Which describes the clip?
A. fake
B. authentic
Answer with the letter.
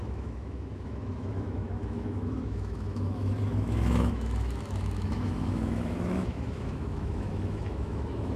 A